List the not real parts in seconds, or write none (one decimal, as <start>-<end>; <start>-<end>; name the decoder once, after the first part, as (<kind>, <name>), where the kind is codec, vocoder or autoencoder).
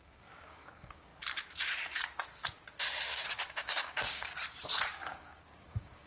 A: 0.0-1.1 (codec, DAC); 3.1-4.3; 4.9-6.1